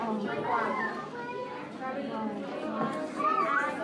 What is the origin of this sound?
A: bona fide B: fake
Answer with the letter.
A